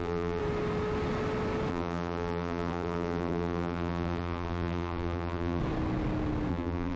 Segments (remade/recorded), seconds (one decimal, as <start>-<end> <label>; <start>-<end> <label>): 0.0-0.4 remade; 0.4-1.7 recorded; 1.7-5.6 remade; 5.6-6.5 recorded; 6.5-7.0 remade